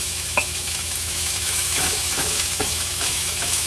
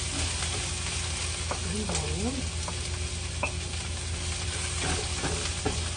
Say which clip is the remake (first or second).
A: first